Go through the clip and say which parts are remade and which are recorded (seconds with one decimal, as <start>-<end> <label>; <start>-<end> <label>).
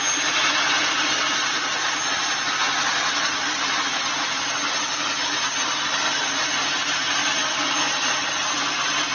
0.0-9.1 recorded